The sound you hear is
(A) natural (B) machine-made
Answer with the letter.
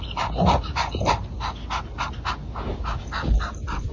A